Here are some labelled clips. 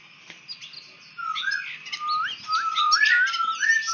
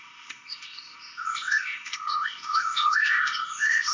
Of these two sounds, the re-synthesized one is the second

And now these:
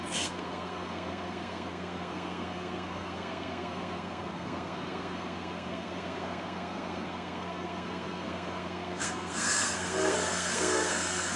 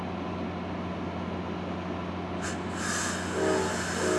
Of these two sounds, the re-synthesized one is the first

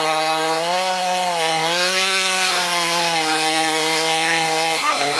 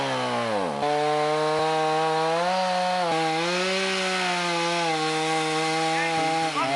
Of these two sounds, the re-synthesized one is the first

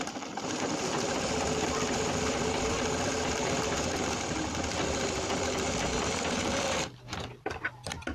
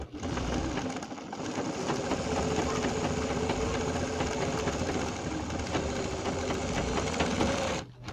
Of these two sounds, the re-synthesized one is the first